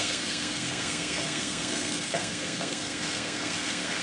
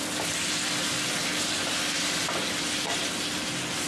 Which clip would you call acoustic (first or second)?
second